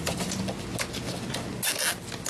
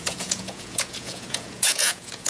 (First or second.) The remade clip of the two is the second